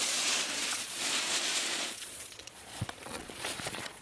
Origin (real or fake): fake